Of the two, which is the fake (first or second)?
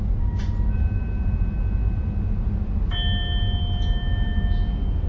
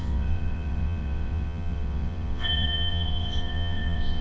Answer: second